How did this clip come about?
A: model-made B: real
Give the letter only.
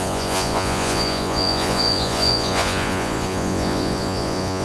A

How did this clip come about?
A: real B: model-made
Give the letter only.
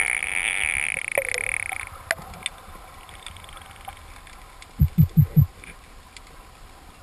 A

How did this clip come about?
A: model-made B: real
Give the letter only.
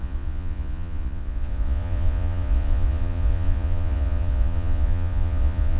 A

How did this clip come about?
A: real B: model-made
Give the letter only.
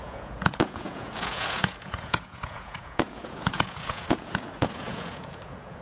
B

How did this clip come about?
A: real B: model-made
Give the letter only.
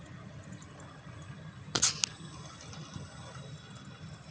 A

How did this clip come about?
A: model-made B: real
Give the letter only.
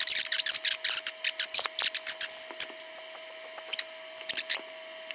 B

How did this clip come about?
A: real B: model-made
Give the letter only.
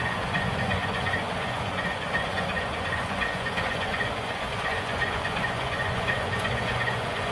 B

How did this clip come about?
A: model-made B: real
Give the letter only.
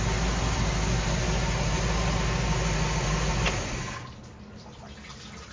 B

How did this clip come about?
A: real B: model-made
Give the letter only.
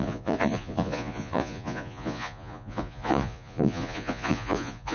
B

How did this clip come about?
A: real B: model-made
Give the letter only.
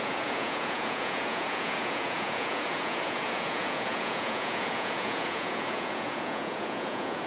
B